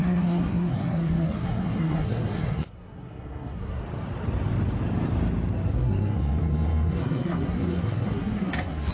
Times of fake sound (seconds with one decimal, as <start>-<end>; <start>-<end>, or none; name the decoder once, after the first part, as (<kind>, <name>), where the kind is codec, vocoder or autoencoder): 0.0-3.8 (codec, SNAC); 5.7-8.9